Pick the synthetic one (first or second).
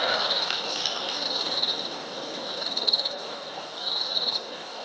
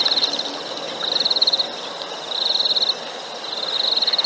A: first